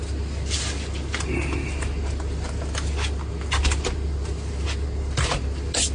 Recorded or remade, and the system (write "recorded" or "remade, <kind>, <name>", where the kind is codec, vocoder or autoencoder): recorded